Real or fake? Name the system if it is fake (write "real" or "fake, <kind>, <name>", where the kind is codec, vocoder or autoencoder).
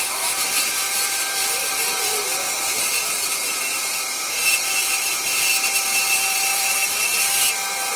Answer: fake, vocoder, BigVGAN v2